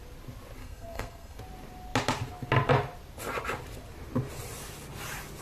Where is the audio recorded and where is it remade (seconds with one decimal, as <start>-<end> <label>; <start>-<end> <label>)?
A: 0.0-0.6 recorded; 0.6-1.4 remade; 1.4-5.4 recorded